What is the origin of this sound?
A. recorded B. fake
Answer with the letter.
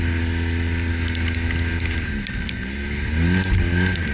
A